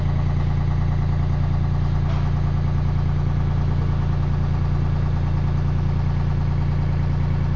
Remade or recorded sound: recorded